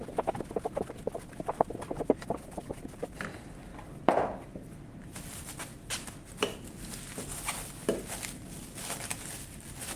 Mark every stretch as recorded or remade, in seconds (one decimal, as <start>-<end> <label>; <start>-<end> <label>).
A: 0.0-10.0 recorded